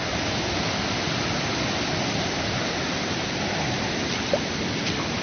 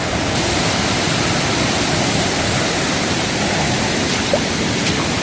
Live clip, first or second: first